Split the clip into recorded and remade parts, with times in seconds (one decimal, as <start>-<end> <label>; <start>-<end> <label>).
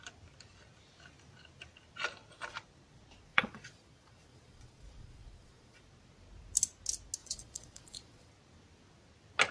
0.0-3.3 recorded; 3.3-5.8 remade; 5.8-7.2 recorded; 7.2-8.3 remade; 8.3-9.5 recorded